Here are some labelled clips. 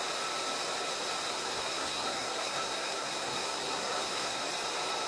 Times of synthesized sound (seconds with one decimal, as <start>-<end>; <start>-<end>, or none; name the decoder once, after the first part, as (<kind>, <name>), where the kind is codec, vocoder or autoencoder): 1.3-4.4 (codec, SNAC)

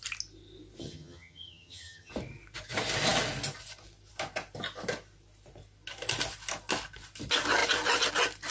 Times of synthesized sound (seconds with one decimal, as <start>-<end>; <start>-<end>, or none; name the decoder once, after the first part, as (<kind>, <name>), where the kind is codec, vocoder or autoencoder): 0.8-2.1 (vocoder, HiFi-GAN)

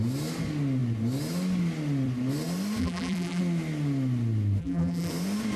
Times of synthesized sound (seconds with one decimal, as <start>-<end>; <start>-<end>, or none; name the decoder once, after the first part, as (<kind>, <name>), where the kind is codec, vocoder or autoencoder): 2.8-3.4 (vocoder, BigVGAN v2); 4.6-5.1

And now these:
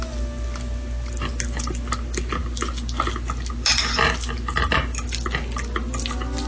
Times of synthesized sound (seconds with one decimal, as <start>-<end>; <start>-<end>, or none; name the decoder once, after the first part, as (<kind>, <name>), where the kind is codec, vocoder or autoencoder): none

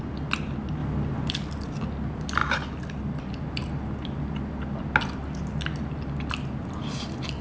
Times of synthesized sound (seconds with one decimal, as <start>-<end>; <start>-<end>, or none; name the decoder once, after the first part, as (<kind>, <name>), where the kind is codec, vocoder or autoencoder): none

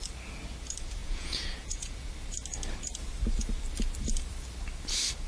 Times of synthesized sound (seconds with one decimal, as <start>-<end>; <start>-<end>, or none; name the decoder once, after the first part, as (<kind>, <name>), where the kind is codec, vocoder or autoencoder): 1.0-2.1 (vocoder, Vocos)

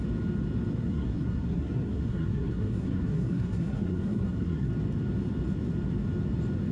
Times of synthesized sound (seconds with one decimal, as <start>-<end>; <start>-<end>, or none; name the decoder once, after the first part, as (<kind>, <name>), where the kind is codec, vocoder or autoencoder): 0.7-4.7 (codec, SNAC)

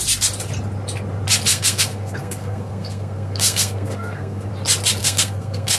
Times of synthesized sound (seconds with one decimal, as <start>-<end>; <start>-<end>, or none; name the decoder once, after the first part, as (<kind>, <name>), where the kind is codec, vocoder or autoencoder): 1.5-4.5 (codec, SNAC); 5.0-5.8